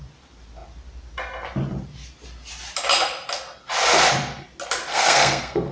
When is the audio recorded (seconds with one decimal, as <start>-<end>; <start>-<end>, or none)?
0.0-4.9